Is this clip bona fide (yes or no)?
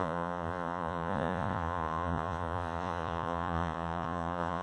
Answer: no